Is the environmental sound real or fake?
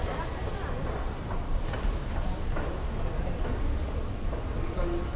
real